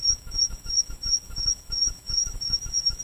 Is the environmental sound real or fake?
fake